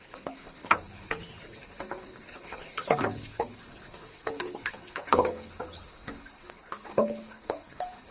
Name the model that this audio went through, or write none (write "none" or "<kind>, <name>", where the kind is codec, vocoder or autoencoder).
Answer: codec, HILCodec